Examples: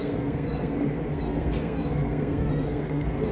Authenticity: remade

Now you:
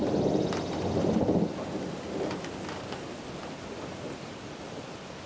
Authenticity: recorded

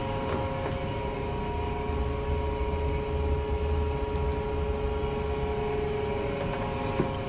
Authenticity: recorded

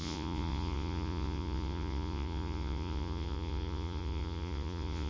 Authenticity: remade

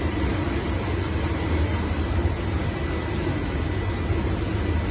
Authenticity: recorded